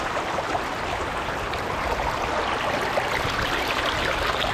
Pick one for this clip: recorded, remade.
recorded